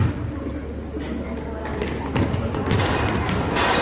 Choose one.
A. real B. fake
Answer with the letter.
A